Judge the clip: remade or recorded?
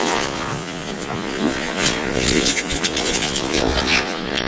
remade